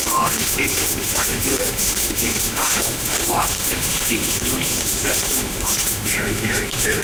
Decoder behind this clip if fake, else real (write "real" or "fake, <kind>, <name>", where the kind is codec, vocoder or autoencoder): fake, autoencoder, DAC-VAE